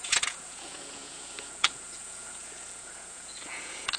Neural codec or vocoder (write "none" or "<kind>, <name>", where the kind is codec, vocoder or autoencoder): vocoder, Vocos